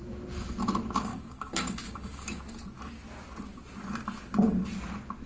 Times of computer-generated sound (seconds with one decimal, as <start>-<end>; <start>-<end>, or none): 1.1-2.4